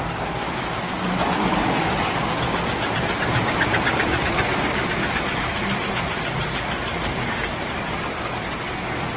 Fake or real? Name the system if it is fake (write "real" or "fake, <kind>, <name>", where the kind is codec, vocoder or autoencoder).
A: real